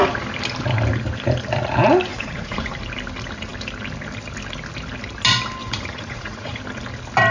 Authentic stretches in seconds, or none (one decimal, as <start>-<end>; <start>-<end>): 0.0-2.1; 2.7-5.6; 6.6-7.3